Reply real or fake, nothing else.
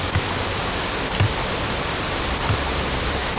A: real